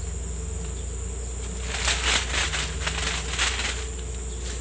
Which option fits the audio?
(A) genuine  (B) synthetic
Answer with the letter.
A